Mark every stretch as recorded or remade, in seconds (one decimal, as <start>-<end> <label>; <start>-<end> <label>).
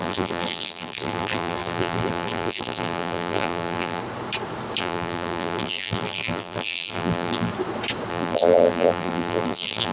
0.0-4.0 remade; 4.0-4.8 recorded; 4.8-7.5 remade; 7.5-8.1 recorded; 8.1-9.9 remade